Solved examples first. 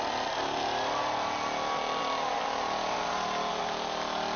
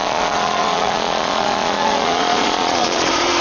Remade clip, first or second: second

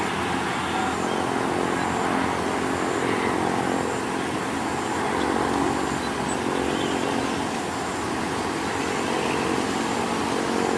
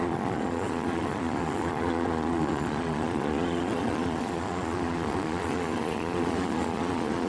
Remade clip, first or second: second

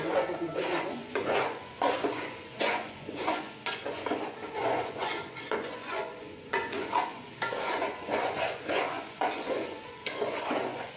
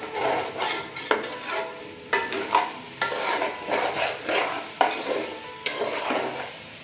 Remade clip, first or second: first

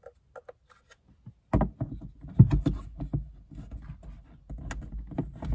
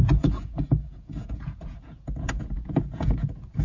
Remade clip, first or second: second